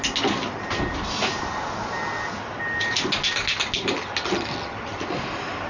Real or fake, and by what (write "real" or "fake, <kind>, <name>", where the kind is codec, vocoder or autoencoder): real